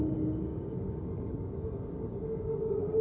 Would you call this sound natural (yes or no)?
no